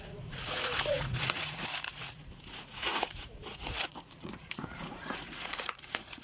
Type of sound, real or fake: fake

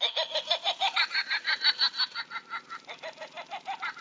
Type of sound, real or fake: real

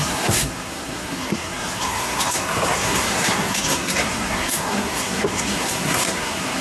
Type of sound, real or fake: fake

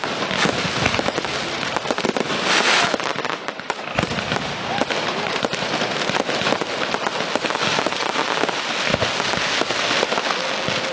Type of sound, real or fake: real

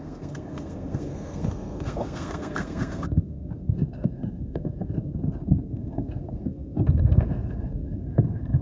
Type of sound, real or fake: fake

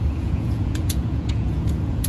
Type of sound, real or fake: fake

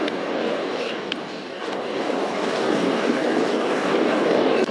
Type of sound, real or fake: fake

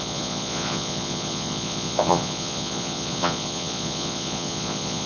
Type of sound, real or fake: fake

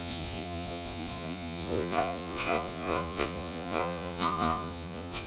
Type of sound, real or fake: fake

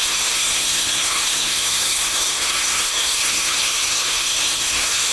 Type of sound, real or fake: fake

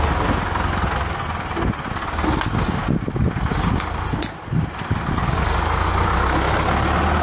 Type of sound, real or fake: real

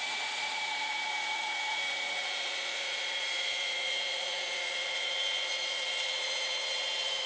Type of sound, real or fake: fake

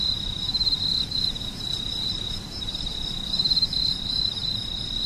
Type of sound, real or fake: fake